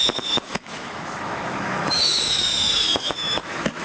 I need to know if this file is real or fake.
fake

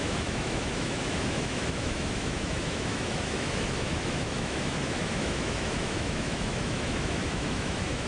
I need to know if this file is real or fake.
fake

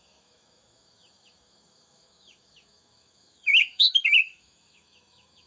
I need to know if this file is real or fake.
fake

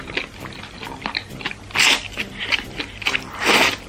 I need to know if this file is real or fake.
real